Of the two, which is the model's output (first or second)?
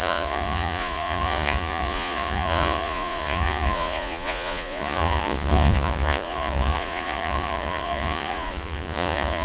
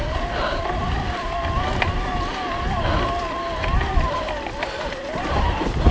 first